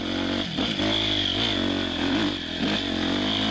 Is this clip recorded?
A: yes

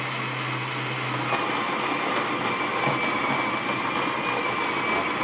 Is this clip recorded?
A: yes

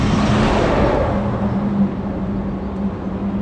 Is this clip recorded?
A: yes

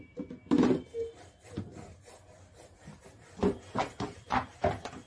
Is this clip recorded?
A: yes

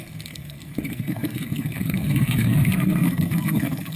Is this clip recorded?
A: no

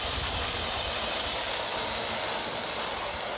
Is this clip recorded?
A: yes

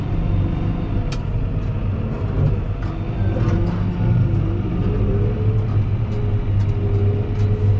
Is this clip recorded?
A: yes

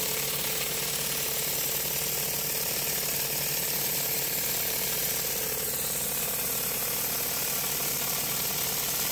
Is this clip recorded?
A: yes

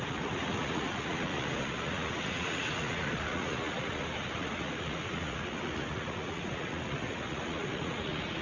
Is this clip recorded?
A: no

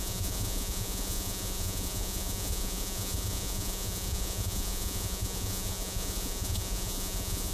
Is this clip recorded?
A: no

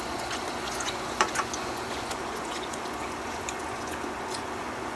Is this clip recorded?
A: no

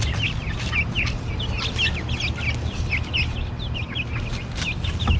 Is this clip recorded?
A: yes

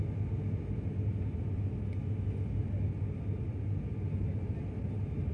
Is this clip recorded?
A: yes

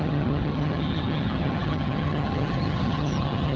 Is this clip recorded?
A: no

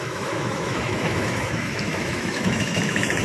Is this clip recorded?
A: no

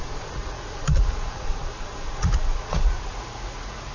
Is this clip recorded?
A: no